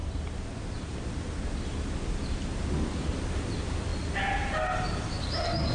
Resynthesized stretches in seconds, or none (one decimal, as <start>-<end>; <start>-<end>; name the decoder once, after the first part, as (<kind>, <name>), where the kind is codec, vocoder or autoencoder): none